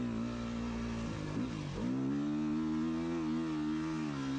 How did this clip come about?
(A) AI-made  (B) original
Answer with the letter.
B